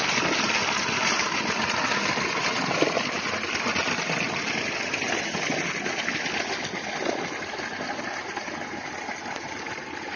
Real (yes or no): yes